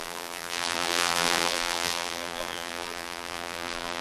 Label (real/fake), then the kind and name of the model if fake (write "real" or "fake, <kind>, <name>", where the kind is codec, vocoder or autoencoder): fake, vocoder, BigVGAN v2